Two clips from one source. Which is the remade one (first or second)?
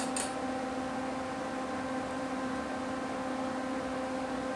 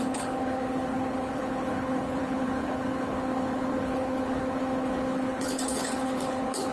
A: second